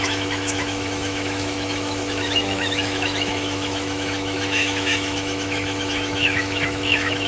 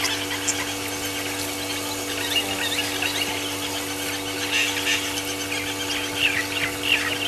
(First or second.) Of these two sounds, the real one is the second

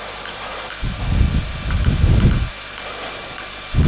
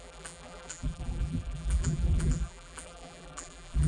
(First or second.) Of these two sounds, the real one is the first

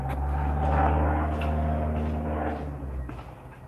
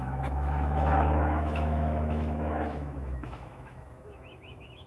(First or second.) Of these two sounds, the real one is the first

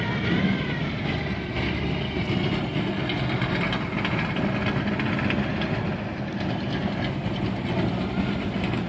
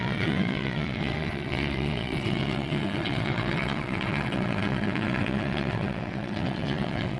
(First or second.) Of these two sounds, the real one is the first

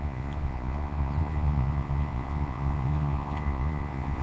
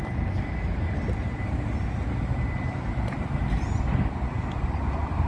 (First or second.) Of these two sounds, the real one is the second